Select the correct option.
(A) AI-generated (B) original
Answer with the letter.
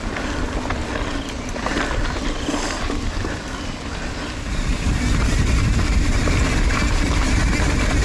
B